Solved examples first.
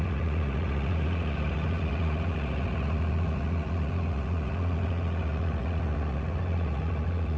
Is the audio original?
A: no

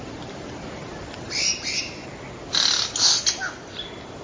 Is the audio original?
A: yes